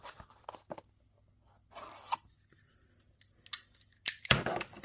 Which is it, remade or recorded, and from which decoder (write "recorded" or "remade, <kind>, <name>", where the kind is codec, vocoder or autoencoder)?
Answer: recorded